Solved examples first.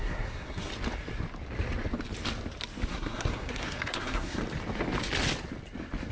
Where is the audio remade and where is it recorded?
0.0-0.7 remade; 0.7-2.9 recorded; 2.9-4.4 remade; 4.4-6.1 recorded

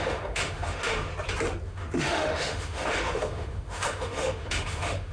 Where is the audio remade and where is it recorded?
0.0-1.1 remade; 1.1-1.6 recorded; 1.6-5.1 remade

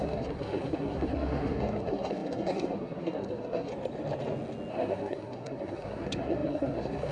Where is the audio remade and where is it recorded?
0.0-3.7 remade; 3.7-4.7 recorded; 4.7-7.1 remade

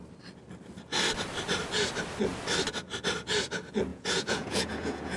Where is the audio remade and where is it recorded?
0.0-3.9 recorded; 3.9-5.2 remade

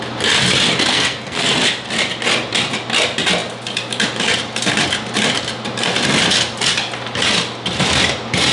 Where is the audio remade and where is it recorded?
0.0-0.9 recorded; 0.9-1.5 remade; 1.5-8.5 recorded

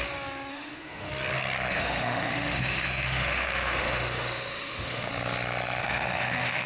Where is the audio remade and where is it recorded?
0.0-0.5 recorded; 0.5-1.1 remade; 1.1-1.7 recorded; 1.7-5.1 remade; 5.1-5.8 recorded; 5.8-6.7 remade

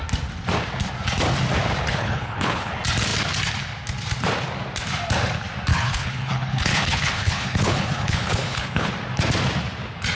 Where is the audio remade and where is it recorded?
0.0-1.9 recorded; 1.9-2.7 remade; 2.7-5.7 recorded; 5.7-8.9 remade; 8.9-10.1 recorded

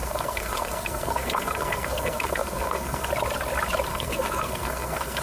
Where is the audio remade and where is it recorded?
0.0-3.1 remade; 3.1-3.9 recorded; 3.9-5.2 remade